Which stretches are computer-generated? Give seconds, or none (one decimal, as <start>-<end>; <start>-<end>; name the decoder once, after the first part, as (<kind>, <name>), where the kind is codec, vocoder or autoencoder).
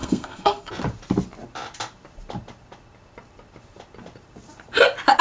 0.0-0.7 (codec, SNAC)